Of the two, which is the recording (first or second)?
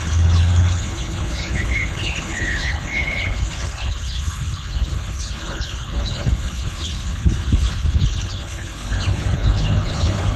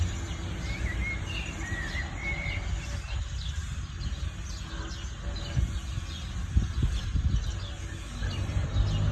second